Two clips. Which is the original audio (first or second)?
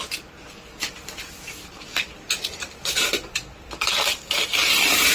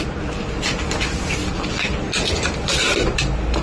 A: second